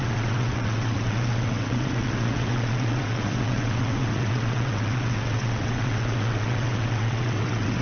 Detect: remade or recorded remade